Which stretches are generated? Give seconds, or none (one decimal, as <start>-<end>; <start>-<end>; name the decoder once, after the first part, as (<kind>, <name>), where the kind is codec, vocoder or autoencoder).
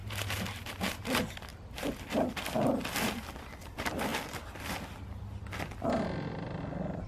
0.0-1.0 (vocoder, BigVGAN v2)